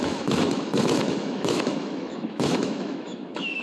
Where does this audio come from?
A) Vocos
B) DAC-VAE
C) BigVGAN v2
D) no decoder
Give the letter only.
B